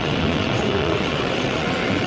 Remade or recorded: remade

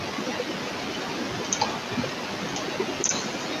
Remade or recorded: recorded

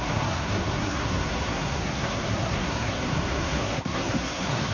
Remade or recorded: remade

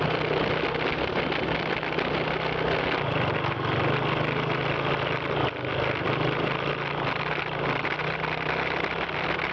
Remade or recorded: recorded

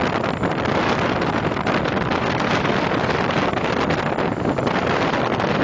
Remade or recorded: recorded